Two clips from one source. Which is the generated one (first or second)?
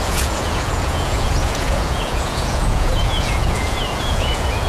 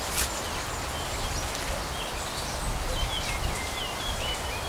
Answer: first